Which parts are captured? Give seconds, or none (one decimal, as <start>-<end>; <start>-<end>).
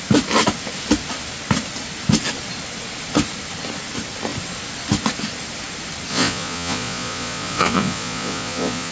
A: 0.0-6.1